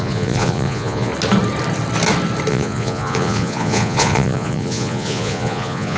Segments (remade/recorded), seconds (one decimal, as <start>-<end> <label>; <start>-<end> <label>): 0.0-1.1 remade; 1.1-2.5 recorded; 2.5-6.0 remade

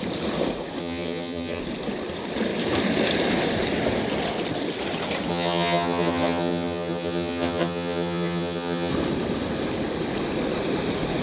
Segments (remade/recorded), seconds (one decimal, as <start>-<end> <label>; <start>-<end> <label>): 0.0-0.8 recorded; 0.8-1.6 remade; 1.6-5.3 recorded; 5.3-8.9 remade; 8.9-11.2 recorded

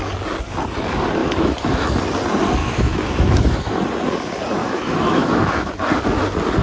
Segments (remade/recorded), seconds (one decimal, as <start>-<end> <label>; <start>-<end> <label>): 0.0-1.2 recorded; 1.2-2.0 remade; 2.0-2.6 recorded; 2.6-3.8 remade; 3.8-4.6 recorded; 4.6-5.7 remade; 5.7-6.6 recorded

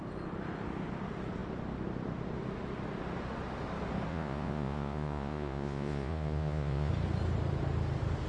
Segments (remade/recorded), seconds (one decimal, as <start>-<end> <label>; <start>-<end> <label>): 0.0-4.1 recorded; 4.1-6.9 remade; 6.9-8.3 recorded

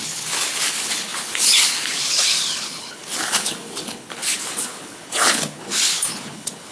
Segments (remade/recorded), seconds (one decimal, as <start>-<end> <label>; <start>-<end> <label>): 0.0-6.7 remade

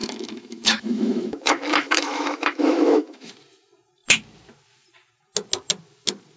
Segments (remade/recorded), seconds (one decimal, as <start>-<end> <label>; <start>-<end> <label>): 0.0-3.3 remade; 3.3-6.4 recorded

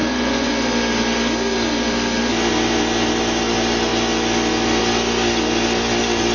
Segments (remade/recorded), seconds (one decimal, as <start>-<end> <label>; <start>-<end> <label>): 0.0-0.5 remade; 0.5-6.3 recorded

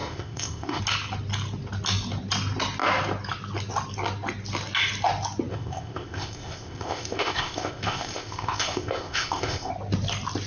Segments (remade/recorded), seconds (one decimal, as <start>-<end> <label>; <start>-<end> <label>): 0.0-0.8 remade; 0.8-5.5 recorded; 5.5-9.7 remade; 9.7-10.5 recorded